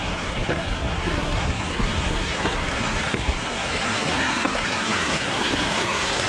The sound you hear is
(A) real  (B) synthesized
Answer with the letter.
B